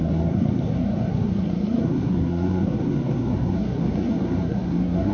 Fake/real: fake